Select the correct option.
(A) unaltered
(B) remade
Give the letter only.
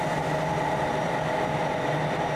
A